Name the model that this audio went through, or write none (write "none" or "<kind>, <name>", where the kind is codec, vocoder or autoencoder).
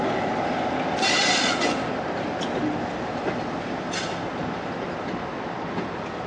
none